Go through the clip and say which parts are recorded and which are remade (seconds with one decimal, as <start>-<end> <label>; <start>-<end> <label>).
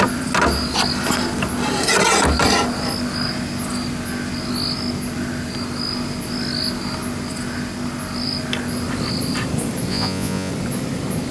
0.0-9.9 recorded; 9.9-10.5 remade; 10.5-11.3 recorded